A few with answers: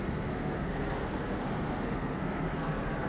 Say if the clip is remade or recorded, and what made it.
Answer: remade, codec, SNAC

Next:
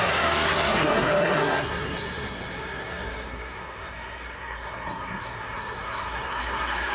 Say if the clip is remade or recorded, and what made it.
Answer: remade, codec, SNAC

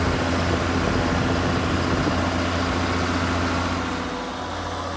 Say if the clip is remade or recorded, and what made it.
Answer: recorded